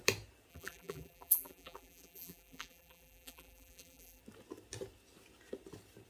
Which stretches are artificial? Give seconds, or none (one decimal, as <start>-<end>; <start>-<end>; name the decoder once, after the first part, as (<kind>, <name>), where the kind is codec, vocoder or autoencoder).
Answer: 0.5-4.2 (vocoder, BigVGAN v2)